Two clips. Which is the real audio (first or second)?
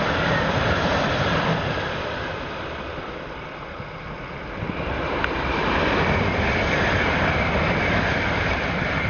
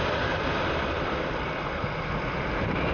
second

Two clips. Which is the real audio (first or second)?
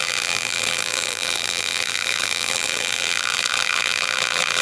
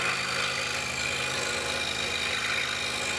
second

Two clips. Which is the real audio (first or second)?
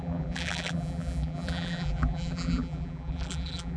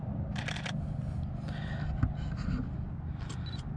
second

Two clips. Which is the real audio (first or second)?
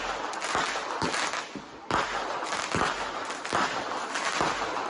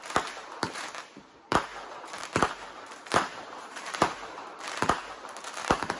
first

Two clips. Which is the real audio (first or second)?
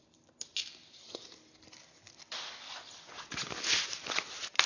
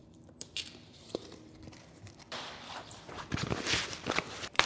first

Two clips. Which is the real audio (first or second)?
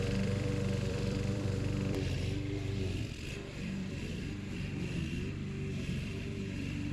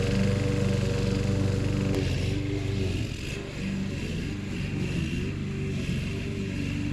second